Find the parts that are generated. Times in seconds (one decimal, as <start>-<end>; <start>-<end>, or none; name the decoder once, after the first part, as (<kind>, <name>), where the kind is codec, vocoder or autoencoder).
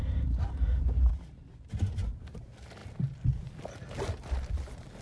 none